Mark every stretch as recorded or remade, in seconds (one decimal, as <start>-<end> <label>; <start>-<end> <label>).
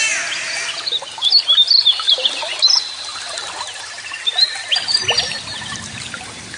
0.0-6.6 recorded